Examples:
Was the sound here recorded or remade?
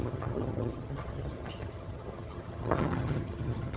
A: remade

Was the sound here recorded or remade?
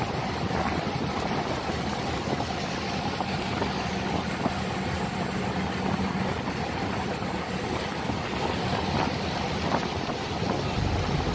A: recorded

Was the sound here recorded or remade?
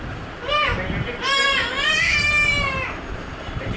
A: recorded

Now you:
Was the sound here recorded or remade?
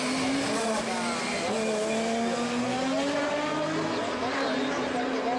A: recorded